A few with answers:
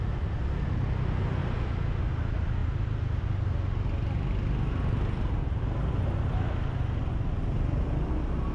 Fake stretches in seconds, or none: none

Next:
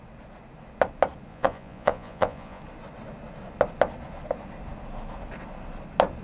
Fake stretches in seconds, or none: 1.3-2.6 (vocoder, Vocos)

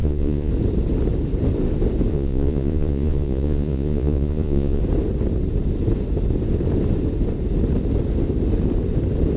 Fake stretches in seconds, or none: 0.0-0.5 (vocoder, Vocos); 2.1-4.8